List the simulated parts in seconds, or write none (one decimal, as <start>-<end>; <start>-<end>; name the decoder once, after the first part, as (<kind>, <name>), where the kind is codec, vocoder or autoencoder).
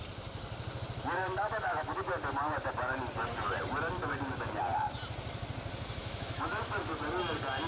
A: 1.2-2.1 (autoencoder, DAC-VAE); 6.0-6.9